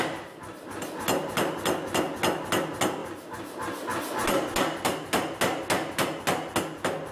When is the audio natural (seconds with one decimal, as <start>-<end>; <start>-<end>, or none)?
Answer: 0.0-7.1